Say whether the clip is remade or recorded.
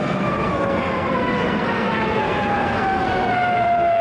remade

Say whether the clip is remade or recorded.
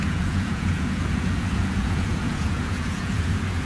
remade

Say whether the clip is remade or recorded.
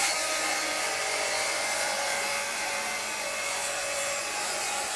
remade